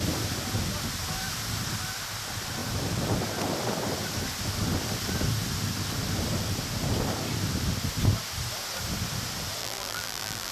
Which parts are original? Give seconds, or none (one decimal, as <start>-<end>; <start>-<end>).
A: 0.0-9.6